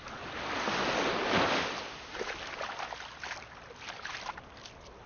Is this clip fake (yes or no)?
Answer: no